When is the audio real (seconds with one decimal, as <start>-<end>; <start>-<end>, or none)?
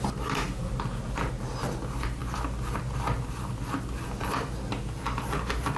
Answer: 0.0-5.8